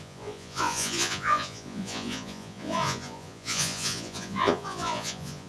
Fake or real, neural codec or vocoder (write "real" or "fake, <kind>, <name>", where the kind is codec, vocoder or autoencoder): fake, vocoder, Vocos